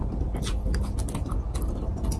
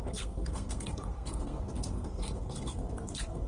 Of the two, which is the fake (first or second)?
second